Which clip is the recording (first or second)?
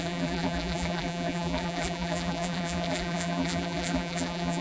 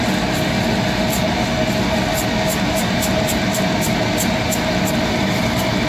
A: second